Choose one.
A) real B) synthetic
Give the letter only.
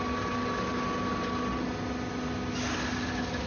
A